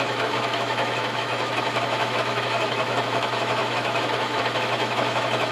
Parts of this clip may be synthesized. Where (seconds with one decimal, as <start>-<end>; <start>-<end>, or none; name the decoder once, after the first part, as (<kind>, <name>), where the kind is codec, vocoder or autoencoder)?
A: 0.0-5.5 (autoencoder, DAC-VAE)